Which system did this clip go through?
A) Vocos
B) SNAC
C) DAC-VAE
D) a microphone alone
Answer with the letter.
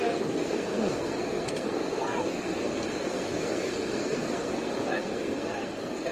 B